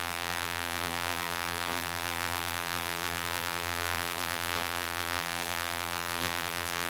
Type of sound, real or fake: fake